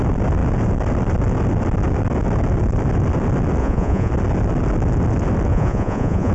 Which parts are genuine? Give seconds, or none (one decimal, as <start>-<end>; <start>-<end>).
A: 0.0-3.6; 4.1-5.5